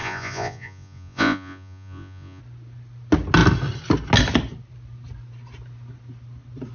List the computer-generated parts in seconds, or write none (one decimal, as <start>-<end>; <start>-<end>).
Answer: 0.0-2.4